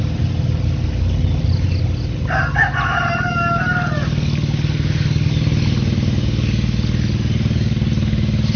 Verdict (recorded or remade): recorded